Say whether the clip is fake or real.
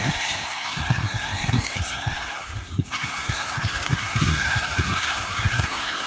fake